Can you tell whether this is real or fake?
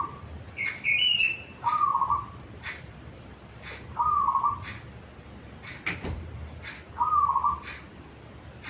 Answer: real